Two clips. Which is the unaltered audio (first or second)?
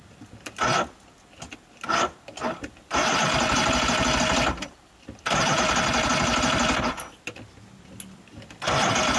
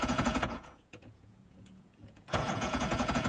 first